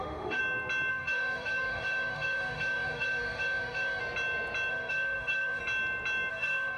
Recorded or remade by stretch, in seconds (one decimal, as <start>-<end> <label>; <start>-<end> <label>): 0.0-0.4 remade; 0.4-0.9 recorded; 0.9-4.0 remade; 4.0-4.7 recorded; 4.7-5.6 remade; 5.6-6.3 recorded; 6.3-6.8 remade